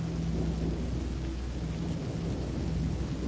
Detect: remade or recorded recorded